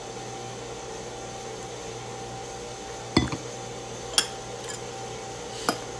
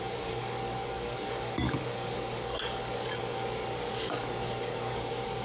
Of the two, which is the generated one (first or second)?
second